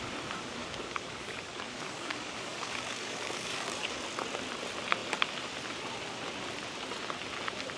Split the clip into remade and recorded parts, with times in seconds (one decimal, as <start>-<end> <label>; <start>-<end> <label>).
0.0-0.6 recorded; 0.6-4.0 remade; 4.0-7.8 recorded